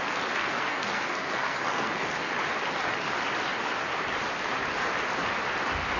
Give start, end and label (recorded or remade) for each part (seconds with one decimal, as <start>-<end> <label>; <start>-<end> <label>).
0.0-0.4 recorded; 0.4-2.3 remade; 2.3-6.0 recorded